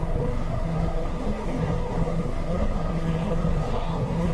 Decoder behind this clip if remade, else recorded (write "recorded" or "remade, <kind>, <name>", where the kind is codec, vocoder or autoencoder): remade, codec, SNAC